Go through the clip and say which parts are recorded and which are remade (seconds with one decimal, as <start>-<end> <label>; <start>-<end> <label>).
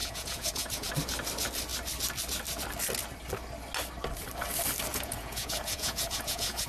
0.0-0.9 remade; 0.9-4.9 recorded; 4.9-6.7 remade